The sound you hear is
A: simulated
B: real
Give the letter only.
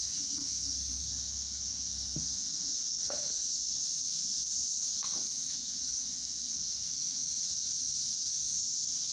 A